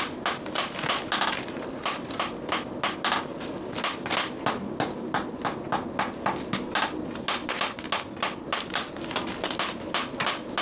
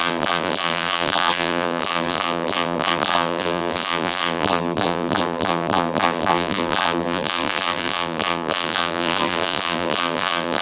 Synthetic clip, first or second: second